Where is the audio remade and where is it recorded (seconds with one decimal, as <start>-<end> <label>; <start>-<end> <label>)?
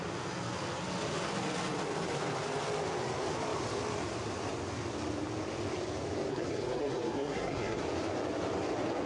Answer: 0.0-6.3 recorded; 6.3-7.8 remade; 7.8-9.1 recorded